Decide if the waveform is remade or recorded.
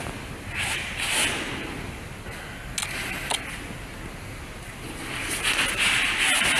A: recorded